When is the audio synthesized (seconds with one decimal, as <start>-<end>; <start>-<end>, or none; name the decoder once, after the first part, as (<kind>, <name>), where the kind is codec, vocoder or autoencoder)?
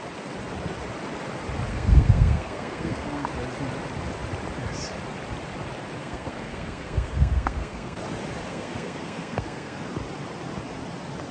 1.7-3.3 (codec, SNAC); 6.0-8.0; 8.5-9.8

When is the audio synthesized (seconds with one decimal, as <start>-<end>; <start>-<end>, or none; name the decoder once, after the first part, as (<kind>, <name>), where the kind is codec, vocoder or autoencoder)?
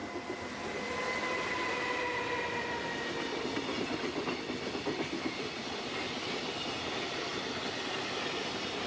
none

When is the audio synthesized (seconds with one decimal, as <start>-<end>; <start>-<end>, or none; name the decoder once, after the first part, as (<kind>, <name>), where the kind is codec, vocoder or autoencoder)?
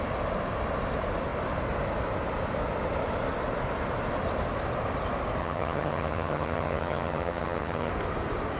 5.4-7.9 (vocoder, HiFi-GAN)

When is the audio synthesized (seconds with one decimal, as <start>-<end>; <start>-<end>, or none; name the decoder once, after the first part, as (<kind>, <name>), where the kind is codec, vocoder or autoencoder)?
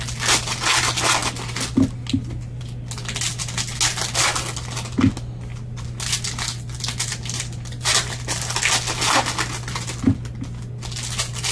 none